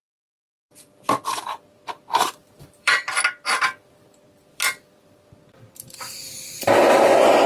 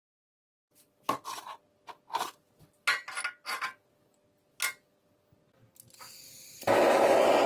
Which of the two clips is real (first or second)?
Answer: second